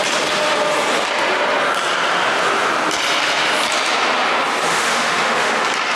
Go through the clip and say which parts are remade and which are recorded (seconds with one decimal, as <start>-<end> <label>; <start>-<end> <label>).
0.0-4.7 recorded; 4.7-5.5 remade; 5.5-5.9 recorded